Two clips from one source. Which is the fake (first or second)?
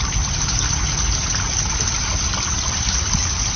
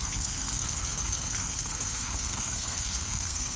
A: second